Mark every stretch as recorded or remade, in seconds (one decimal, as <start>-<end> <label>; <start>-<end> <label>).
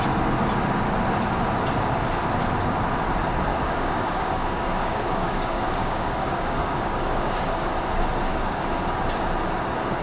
0.0-3.5 recorded; 3.5-7.7 remade; 7.7-8.3 recorded; 8.3-8.8 remade; 8.8-10.0 recorded